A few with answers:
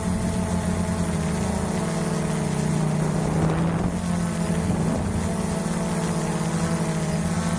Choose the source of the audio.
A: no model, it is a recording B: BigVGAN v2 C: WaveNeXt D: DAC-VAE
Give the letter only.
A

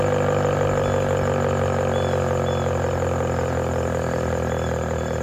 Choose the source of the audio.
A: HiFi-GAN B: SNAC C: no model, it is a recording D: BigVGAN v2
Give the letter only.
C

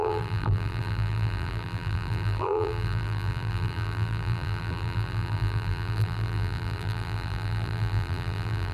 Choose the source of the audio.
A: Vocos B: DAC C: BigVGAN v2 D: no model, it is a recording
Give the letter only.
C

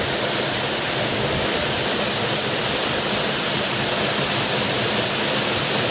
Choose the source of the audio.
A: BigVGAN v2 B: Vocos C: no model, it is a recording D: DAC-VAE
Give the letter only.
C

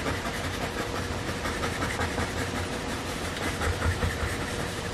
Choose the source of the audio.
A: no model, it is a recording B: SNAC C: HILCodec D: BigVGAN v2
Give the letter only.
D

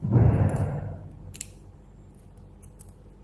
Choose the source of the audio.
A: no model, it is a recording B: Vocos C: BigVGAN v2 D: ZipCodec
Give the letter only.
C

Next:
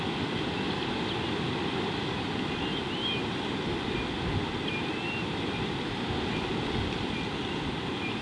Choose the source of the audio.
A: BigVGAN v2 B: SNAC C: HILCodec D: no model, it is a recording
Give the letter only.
A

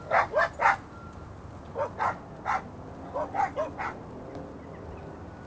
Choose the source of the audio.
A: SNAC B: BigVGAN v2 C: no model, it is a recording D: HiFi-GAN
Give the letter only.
C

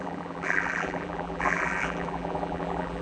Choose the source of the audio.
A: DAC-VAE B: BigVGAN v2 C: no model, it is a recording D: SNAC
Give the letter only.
B